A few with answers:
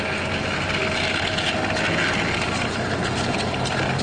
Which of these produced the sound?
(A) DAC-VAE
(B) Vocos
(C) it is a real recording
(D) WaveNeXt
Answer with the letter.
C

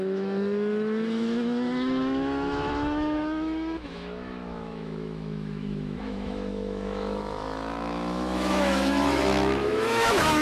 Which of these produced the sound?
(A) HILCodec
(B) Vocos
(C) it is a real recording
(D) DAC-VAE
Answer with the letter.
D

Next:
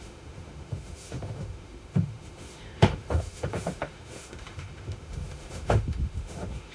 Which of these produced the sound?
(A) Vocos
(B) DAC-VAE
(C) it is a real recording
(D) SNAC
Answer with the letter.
B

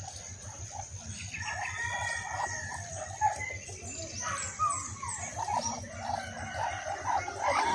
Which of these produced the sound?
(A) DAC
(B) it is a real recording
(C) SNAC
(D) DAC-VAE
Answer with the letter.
B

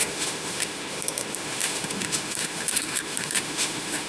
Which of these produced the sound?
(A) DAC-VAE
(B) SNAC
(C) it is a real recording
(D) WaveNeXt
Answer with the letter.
A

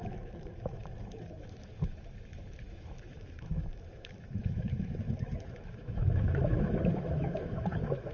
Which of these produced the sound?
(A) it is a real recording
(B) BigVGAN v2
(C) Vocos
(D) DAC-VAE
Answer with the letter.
D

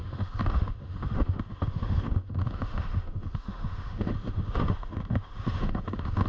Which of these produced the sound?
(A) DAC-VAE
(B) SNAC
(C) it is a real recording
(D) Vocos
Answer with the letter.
A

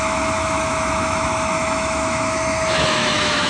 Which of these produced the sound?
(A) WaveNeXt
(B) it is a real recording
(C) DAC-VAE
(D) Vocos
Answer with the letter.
C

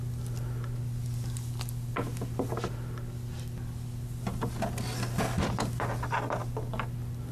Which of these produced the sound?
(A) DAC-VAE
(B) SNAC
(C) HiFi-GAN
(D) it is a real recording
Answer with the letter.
D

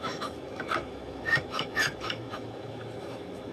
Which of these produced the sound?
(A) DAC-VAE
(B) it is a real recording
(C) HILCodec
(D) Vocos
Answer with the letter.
A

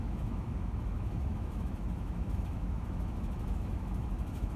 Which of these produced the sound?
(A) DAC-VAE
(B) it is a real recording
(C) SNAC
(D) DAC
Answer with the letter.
A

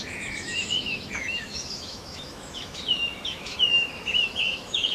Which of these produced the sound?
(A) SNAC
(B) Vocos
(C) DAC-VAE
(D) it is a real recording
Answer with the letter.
C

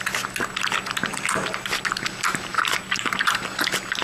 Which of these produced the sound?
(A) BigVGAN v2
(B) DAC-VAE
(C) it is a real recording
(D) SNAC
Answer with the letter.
C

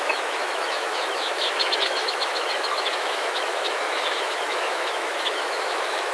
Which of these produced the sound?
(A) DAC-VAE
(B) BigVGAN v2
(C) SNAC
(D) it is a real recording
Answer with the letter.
A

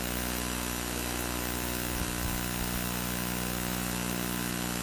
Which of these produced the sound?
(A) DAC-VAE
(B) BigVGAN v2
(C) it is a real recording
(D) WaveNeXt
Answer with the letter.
A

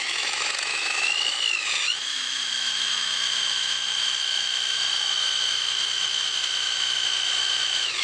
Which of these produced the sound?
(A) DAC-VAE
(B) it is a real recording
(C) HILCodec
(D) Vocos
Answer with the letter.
A